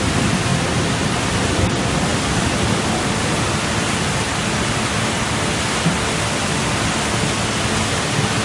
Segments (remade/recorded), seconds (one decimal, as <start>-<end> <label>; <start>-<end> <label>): 0.0-8.4 recorded